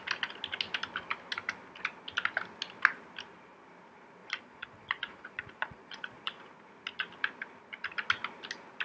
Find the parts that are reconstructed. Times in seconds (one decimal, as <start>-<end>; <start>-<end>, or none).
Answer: 4.2-6.5